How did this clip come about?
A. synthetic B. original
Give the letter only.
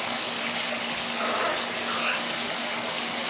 A